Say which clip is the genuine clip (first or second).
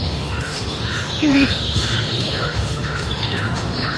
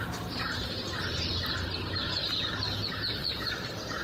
second